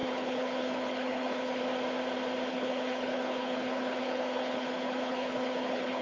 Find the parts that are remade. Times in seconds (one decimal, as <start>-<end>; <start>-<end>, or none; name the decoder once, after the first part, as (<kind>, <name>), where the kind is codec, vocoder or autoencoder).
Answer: 0.0-1.6 (codec, HILCodec); 2.5-6.0